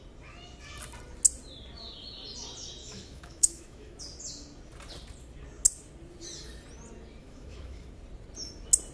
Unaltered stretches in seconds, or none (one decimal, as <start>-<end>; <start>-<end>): 0.0-2.8; 4.0-7.2; 7.9-8.9

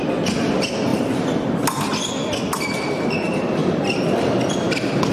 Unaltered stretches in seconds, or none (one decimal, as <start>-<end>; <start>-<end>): 0.0-0.9; 1.5-5.1